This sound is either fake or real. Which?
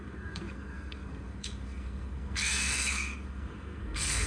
fake